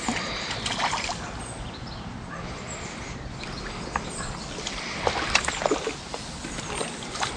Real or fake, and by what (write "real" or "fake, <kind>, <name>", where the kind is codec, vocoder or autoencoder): real